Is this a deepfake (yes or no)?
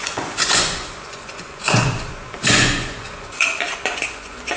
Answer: yes